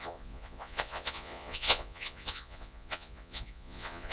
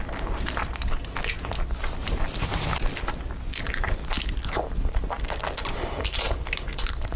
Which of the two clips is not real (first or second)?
first